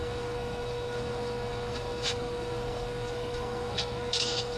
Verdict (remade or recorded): remade